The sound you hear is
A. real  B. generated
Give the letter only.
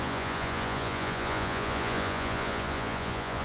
B